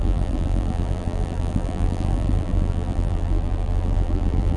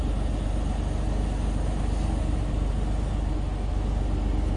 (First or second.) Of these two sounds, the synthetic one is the first